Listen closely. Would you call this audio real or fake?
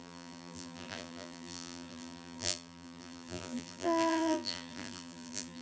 fake